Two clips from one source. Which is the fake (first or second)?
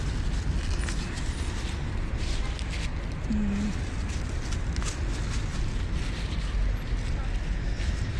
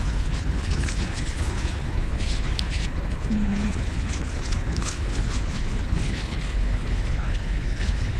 second